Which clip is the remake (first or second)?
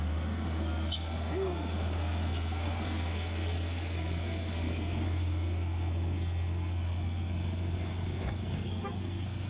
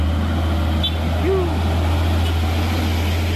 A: first